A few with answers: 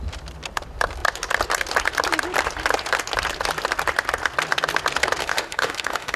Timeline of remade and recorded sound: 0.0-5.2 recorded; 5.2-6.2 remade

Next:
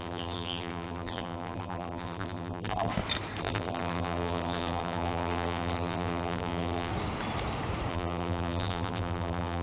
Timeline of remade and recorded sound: 0.0-2.9 remade; 2.9-3.4 recorded; 3.4-6.9 remade; 6.9-7.9 recorded; 7.9-9.6 remade

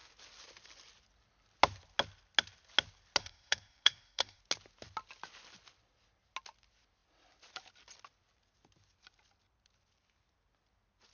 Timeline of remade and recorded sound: 0.0-3.2 recorded; 3.2-4.4 remade; 4.4-11.1 recorded

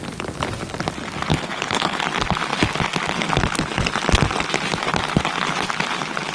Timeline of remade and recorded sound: 0.0-1.3 recorded; 1.3-2.0 remade; 2.0-6.3 recorded

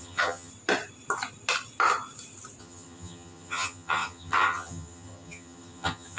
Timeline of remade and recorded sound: 0.0-0.5 remade; 0.5-2.6 recorded; 2.6-6.2 remade

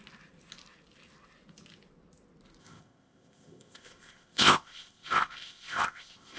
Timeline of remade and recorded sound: 0.0-2.6 recorded; 2.6-6.4 remade

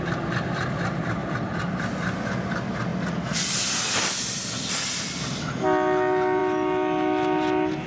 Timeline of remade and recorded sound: 0.0-7.9 recorded